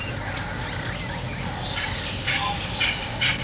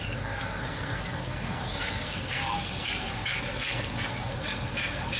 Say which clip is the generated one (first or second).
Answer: second